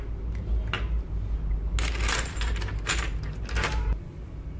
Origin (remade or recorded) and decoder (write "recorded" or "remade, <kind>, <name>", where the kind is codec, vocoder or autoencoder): recorded